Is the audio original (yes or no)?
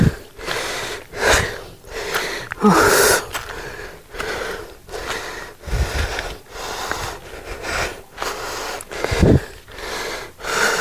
yes